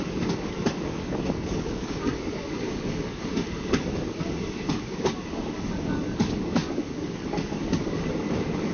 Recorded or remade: remade